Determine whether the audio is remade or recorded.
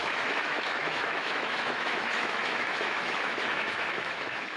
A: remade